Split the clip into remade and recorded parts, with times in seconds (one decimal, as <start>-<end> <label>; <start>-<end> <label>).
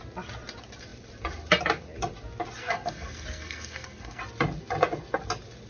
0.0-2.6 recorded; 2.6-4.2 remade; 4.2-5.7 recorded